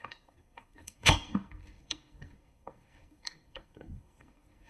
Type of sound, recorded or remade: remade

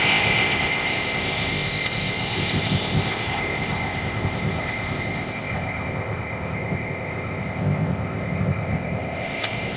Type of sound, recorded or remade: remade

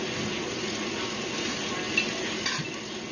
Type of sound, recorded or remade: recorded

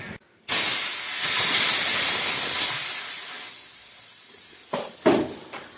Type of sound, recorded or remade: recorded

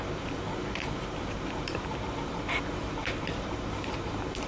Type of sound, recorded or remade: remade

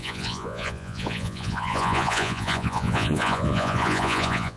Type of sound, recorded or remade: remade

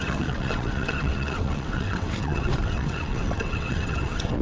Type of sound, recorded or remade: remade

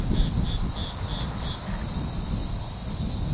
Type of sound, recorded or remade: recorded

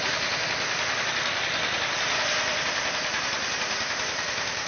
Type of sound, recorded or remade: remade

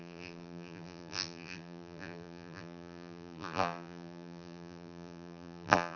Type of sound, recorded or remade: remade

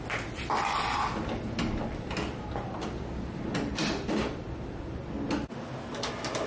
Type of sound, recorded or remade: recorded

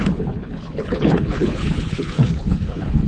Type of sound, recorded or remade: remade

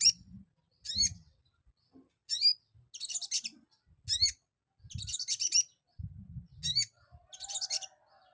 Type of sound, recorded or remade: recorded